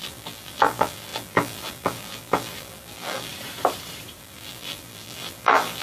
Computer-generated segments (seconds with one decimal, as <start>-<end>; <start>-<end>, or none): 0.0-3.3; 4.2-5.8